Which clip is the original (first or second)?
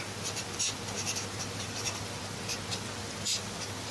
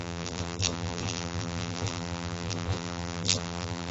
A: first